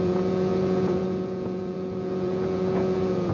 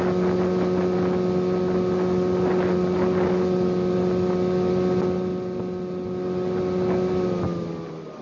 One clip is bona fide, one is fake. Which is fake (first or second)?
first